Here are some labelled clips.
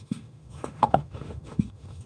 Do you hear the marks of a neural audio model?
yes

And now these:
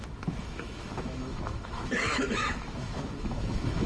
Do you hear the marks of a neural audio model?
yes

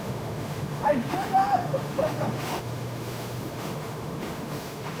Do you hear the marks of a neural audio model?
yes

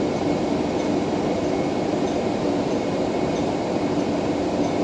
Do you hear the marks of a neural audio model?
no